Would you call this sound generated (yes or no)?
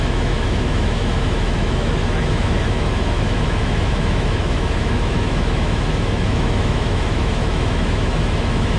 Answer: yes